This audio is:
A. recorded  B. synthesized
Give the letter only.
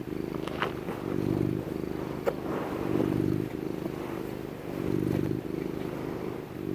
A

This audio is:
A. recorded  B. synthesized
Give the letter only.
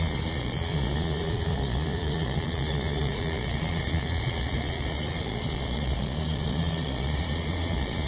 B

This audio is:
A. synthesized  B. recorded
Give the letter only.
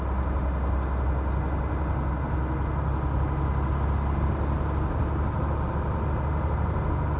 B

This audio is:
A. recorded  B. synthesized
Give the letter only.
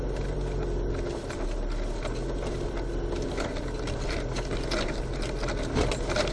A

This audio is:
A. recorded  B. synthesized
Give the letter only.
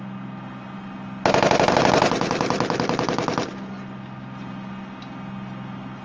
A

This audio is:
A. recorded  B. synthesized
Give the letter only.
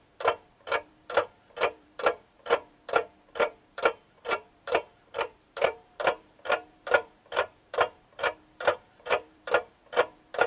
B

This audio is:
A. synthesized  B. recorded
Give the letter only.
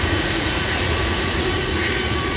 A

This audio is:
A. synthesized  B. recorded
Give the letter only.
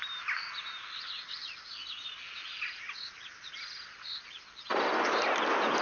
B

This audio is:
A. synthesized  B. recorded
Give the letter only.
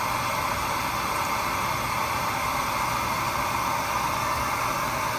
B